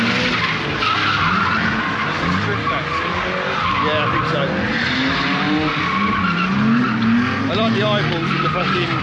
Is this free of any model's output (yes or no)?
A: yes